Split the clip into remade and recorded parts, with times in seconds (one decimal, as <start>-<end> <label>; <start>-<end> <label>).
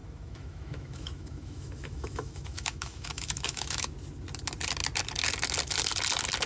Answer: 0.0-3.9 remade; 3.9-6.5 recorded